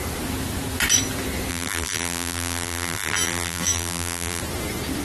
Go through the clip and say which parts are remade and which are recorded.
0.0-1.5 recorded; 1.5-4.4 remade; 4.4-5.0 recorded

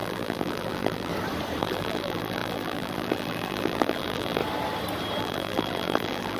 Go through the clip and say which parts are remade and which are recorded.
0.0-1.1 remade; 1.1-1.6 recorded; 1.6-4.4 remade; 4.4-5.2 recorded; 5.2-6.4 remade

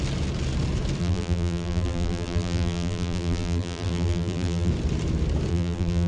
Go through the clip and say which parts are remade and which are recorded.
0.0-1.0 recorded; 1.0-4.7 remade; 4.7-5.5 recorded; 5.5-6.1 remade